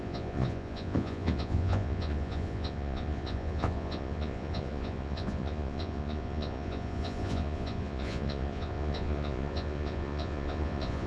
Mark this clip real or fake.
fake